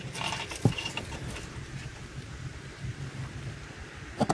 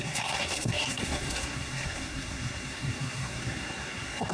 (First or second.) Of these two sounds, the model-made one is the second